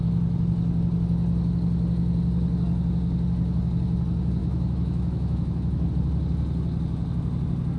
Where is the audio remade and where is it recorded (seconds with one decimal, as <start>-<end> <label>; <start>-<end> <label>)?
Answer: 0.0-4.4 recorded; 4.4-5.9 remade; 5.9-7.8 recorded